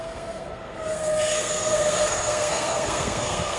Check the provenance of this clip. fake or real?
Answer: fake